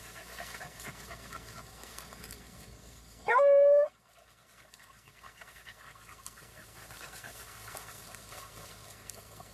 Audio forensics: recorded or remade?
remade